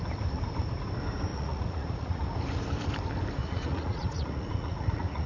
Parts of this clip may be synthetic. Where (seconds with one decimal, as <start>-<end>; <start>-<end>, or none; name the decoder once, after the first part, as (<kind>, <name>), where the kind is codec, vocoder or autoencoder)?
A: 1.3-2.2 (vocoder, Vocos); 3.4-5.3